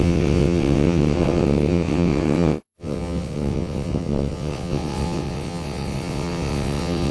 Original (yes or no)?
no